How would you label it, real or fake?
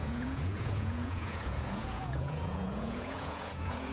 fake